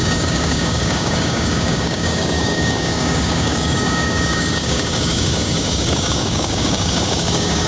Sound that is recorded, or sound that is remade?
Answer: remade